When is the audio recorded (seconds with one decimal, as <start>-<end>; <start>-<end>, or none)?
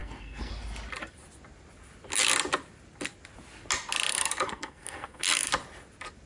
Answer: 0.5-4.1; 5.5-6.3